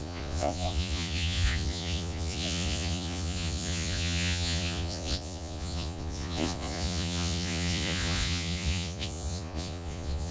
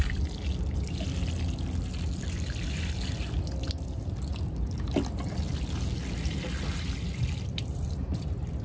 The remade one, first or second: first